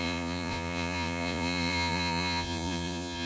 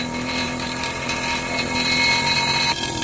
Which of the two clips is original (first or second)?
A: second